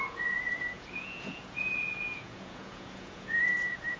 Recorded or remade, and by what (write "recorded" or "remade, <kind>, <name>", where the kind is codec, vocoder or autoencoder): remade, vocoder, Vocos